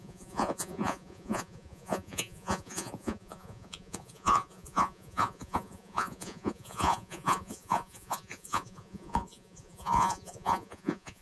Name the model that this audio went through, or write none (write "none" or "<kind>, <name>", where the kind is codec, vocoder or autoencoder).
vocoder, Vocos